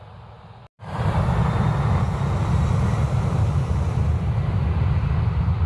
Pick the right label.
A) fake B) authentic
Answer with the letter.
B